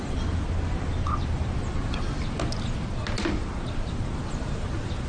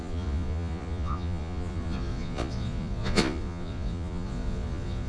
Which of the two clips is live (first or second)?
first